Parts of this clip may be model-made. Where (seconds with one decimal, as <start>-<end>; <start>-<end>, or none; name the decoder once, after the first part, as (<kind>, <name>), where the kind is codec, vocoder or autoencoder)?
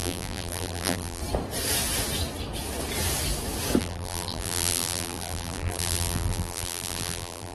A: 0.0-1.2 (vocoder, BigVGAN v2); 3.8-7.5